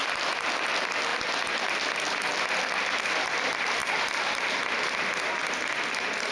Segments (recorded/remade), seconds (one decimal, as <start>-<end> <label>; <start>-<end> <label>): 0.0-0.7 remade; 0.7-6.3 recorded